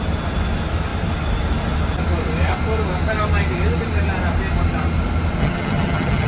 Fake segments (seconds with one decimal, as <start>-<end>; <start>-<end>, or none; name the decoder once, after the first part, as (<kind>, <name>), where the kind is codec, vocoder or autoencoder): 5.4-6.3 (vocoder, HiFi-GAN)